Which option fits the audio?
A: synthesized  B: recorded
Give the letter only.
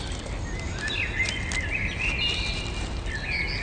B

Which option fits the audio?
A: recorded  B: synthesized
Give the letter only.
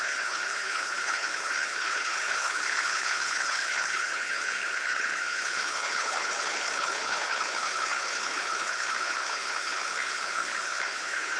B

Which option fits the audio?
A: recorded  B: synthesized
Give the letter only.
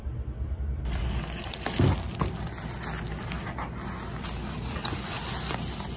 A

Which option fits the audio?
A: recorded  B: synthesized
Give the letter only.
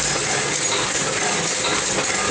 A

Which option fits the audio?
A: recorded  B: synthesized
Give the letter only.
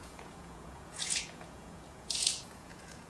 B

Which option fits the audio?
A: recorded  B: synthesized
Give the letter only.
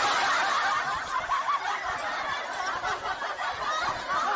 A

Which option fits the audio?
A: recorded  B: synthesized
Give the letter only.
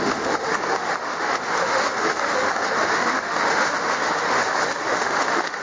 B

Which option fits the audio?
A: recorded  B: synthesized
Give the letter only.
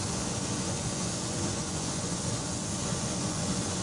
B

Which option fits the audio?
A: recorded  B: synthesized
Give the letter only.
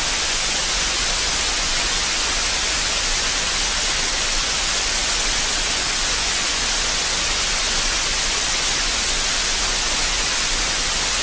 B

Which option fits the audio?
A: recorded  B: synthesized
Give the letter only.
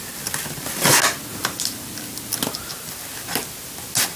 A